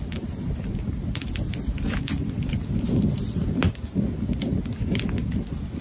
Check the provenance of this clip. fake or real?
real